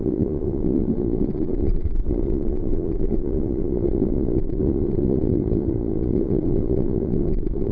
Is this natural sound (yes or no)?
no